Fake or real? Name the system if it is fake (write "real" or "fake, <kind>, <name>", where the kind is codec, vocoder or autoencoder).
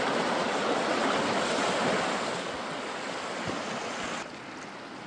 real